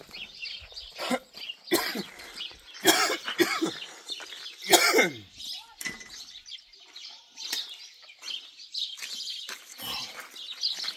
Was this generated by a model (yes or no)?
yes